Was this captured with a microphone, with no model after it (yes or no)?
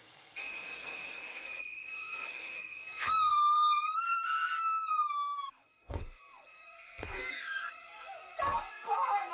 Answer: no